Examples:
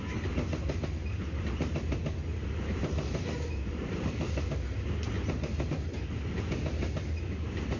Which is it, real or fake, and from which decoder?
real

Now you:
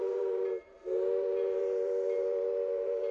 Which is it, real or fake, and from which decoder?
fake, vocoder, BigVGAN v2